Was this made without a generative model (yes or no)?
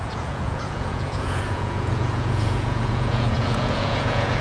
no